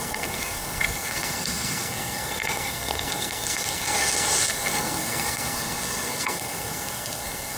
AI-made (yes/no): yes